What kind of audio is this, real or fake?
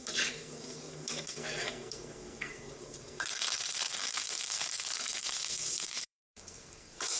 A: fake